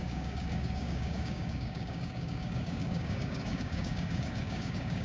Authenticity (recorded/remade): remade